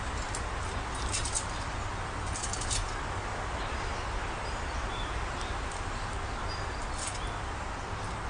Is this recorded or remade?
recorded